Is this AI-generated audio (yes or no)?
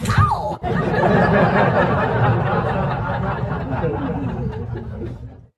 no